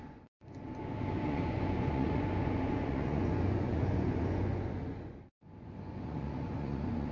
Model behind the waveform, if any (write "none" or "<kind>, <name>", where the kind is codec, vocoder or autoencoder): vocoder, Vocos